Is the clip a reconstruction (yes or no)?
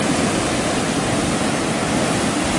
no